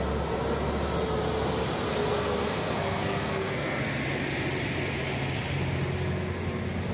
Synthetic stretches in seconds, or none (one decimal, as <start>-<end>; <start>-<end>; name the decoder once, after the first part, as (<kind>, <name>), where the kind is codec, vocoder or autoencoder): 1.9-3.8 (codec, SNAC)